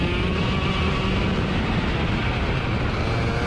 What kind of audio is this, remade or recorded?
recorded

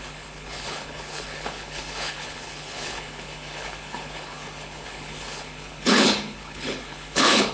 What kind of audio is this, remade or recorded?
remade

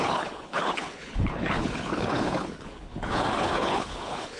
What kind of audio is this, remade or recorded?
remade